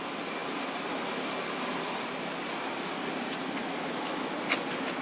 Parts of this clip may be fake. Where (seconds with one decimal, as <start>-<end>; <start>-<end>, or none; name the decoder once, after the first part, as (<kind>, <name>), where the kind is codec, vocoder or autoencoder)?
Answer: 3.6-4.3 (autoencoder, DAC-VAE)